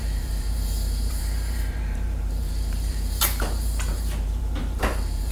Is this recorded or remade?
remade